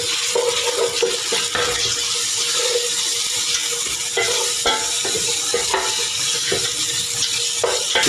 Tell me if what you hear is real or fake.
real